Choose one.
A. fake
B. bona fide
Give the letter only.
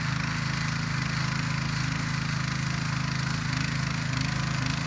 B